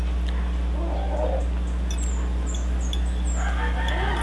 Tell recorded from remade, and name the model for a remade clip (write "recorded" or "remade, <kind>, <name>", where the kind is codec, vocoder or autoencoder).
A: recorded